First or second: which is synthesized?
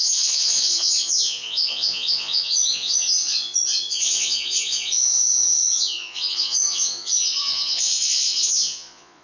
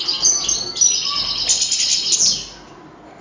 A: first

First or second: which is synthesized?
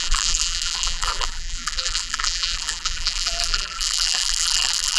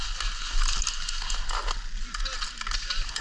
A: first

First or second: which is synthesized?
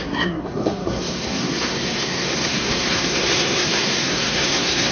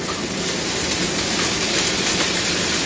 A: first